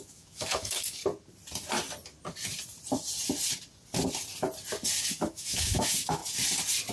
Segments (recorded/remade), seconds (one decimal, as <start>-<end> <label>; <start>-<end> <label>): 0.0-1.0 remade; 1.0-5.1 recorded; 5.1-6.2 remade; 6.2-6.9 recorded